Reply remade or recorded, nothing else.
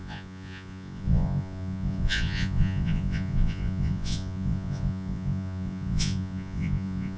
remade